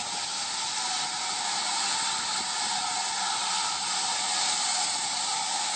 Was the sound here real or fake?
real